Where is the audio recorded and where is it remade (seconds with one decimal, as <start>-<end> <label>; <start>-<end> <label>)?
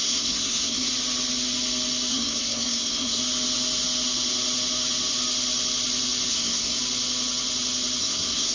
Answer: 0.0-0.9 remade; 0.9-2.1 recorded; 2.1-3.2 remade; 3.2-6.3 recorded; 6.3-6.8 remade; 6.8-8.0 recorded; 8.0-8.5 remade